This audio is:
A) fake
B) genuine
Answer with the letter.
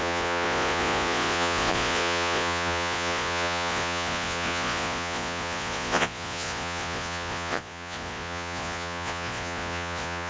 A